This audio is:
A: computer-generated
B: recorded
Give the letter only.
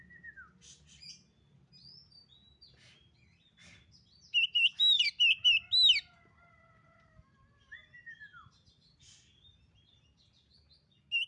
B